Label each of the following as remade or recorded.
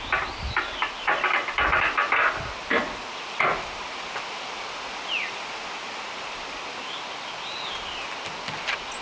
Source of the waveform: recorded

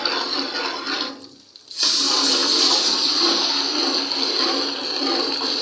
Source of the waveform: recorded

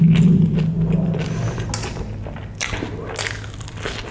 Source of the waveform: recorded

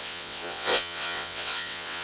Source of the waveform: remade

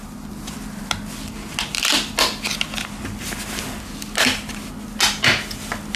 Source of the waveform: recorded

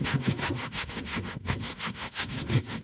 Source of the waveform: remade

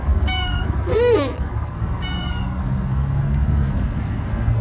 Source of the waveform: remade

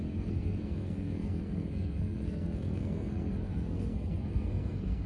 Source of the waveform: remade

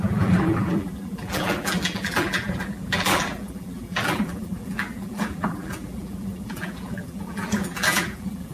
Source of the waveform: remade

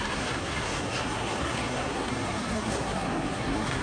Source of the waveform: remade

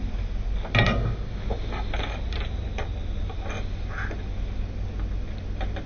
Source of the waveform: recorded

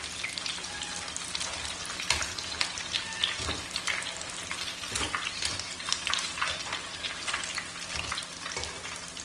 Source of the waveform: recorded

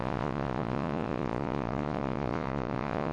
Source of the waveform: remade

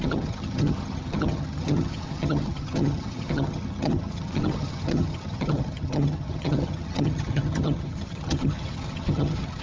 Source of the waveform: remade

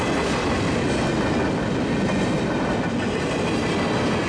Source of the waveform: recorded